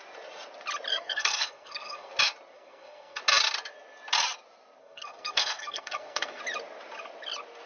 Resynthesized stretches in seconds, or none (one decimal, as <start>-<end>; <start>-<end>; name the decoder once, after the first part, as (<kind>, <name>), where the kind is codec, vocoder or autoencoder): 0.9-2.1 (codec, SNAC); 2.5-3.2; 4.8-6.4